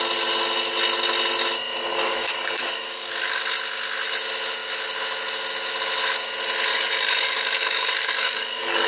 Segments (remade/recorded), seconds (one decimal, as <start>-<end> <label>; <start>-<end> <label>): 0.0-1.9 recorded; 1.9-3.4 remade; 3.4-6.7 recorded; 6.7-8.9 remade